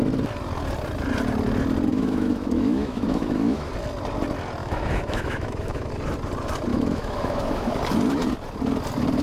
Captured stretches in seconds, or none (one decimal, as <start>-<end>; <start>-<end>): 0.0-1.9; 3.7-4.6; 5.9-6.7; 7.8-9.2